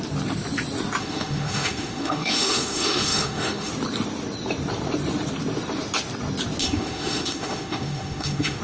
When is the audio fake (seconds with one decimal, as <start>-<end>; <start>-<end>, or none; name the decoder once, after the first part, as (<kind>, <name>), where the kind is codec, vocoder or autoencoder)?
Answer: 1.0-3.7 (autoencoder, DAC-VAE); 6.6-8.6